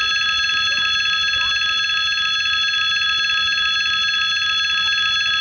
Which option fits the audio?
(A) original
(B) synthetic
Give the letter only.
A